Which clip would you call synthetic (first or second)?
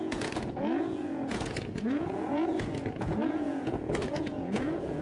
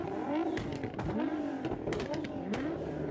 first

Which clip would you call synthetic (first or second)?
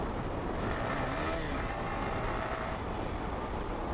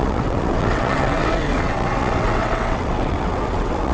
second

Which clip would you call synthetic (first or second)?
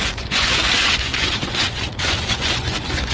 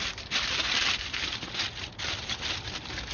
first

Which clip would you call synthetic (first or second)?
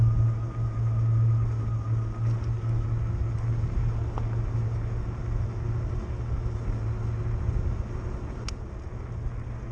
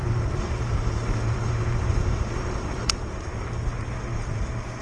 second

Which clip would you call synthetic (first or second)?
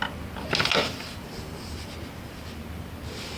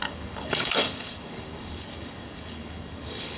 second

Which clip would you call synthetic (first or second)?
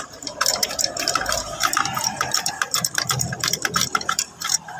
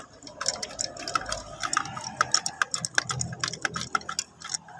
first